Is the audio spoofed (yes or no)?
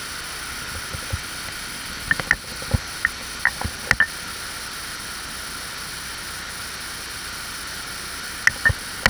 no